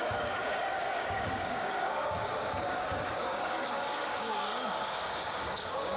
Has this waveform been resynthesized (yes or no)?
yes